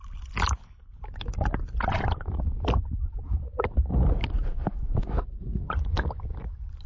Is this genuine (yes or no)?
yes